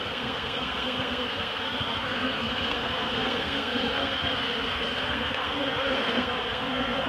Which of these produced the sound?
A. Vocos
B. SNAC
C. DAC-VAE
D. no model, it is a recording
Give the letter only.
B